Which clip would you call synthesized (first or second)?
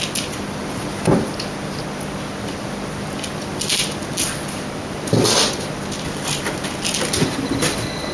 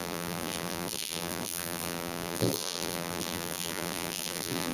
second